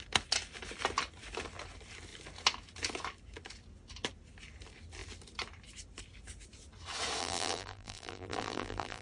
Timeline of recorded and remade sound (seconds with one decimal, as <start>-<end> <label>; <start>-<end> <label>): 0.0-7.2 recorded; 7.2-9.0 remade